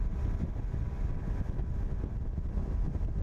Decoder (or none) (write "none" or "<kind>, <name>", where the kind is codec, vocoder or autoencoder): none